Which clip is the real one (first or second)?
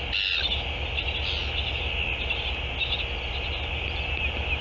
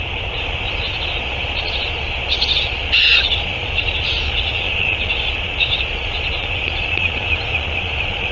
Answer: first